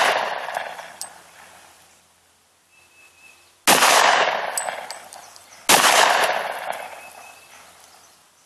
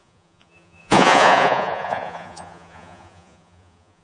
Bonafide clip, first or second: first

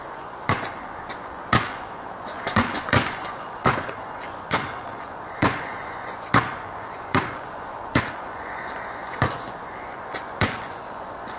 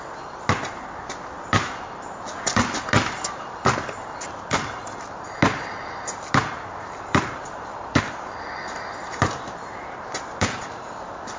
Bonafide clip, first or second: second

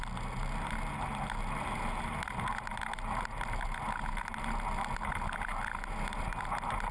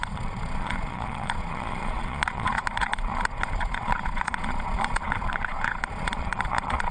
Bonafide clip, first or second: first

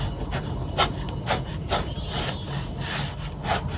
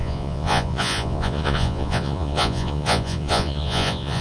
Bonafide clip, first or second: first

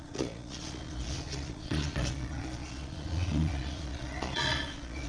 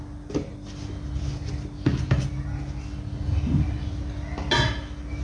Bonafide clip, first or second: second